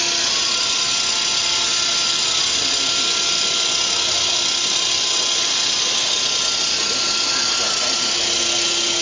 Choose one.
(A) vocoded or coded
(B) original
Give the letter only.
B